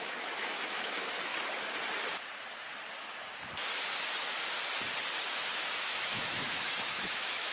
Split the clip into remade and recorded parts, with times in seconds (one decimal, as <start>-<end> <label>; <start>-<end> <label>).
0.0-1.3 remade; 1.3-5.8 recorded; 5.8-7.5 remade